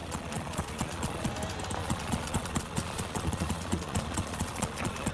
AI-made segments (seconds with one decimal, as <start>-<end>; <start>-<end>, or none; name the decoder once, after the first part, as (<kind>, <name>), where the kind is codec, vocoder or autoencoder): 0.0-1.3 (vocoder, Vocos); 1.8-5.1